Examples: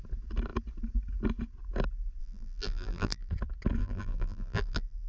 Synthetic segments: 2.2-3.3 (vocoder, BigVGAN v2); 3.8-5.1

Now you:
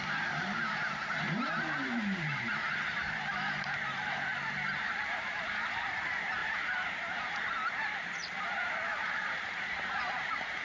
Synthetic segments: 0.0-4.3 (vocoder, BigVGAN v2); 5.2-10.6

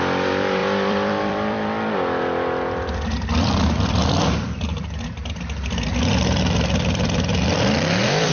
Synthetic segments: 0.0-8.3 (vocoder, BigVGAN v2)

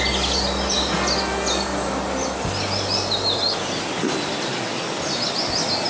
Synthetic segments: none

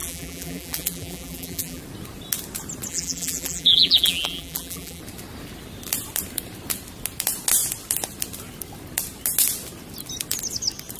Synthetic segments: 0.0-1.8 (vocoder, BigVGAN v2); 2.9-5.0

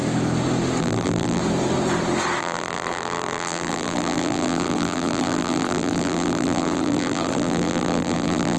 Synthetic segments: 0.8-1.4 (vocoder, BigVGAN v2); 2.4-8.6

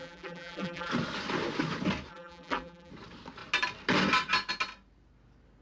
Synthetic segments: 0.0-0.9 (vocoder, BigVGAN v2); 2.1-2.9